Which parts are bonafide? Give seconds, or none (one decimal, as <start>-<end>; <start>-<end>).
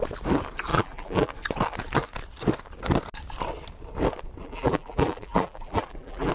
0.0-0.7; 1.3-4.4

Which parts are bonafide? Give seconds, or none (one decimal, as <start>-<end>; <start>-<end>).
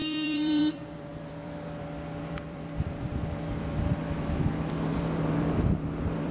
none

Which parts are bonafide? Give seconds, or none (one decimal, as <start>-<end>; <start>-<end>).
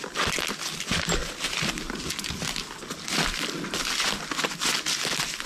0.0-5.5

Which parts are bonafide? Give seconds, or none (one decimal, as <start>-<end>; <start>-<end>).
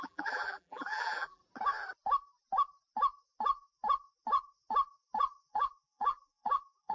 1.4-5.5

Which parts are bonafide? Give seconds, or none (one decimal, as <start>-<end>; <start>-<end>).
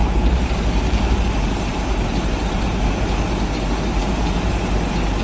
3.1-4.0; 4.8-5.2